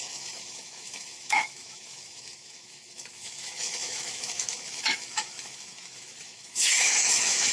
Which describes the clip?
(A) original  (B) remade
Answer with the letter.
B